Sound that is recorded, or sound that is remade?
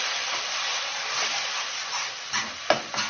recorded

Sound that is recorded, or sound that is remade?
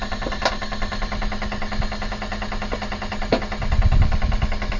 recorded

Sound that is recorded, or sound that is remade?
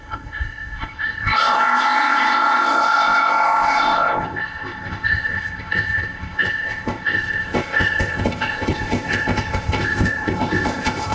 remade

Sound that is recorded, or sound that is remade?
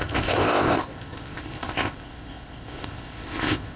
remade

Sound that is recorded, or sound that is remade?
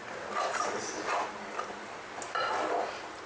recorded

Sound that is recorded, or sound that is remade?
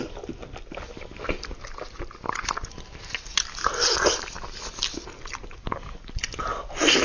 recorded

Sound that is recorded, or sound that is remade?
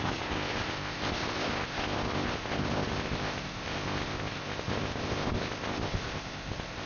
remade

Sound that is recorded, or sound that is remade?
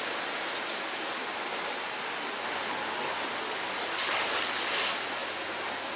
recorded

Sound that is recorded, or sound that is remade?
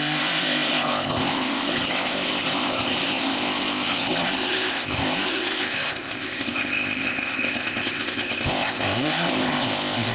remade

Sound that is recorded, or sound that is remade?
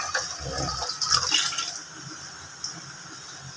recorded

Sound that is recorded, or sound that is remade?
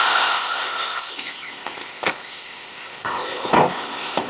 remade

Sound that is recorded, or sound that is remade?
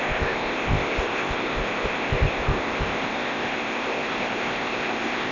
remade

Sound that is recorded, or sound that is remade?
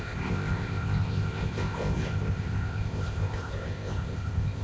remade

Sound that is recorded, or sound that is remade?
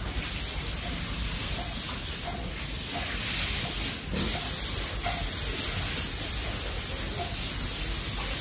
recorded